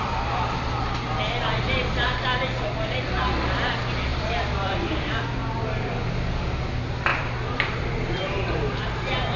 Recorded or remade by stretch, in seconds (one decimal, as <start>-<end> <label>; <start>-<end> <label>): 0.0-4.1 recorded; 4.1-5.1 remade; 5.1-7.1 recorded; 7.1-9.4 remade